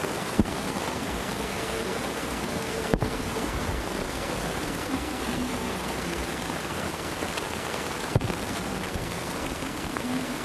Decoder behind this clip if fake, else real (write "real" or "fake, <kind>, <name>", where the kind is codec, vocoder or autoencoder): fake, codec, SNAC